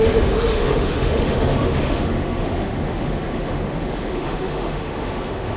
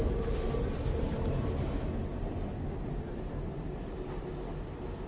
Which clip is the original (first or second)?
second